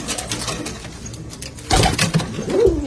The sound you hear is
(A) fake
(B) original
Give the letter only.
B